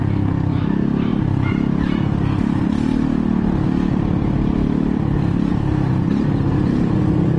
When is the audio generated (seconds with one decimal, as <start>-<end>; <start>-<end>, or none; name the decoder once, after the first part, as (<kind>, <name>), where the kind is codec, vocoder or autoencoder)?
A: none